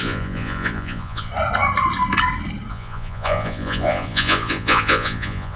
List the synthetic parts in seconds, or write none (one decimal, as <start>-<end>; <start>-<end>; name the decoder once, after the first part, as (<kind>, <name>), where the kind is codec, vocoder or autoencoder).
0.0-1.3 (vocoder, Vocos); 2.7-5.6